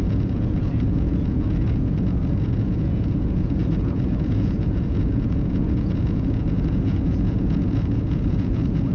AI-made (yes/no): yes